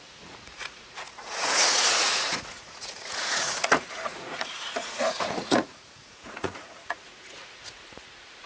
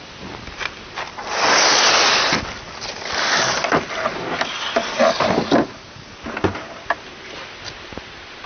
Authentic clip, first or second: second